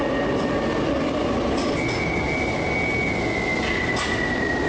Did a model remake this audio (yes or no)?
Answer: no